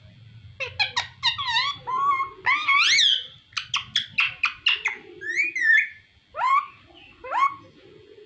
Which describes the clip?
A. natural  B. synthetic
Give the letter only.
A